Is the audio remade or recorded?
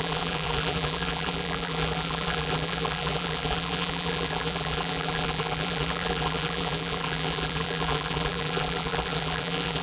remade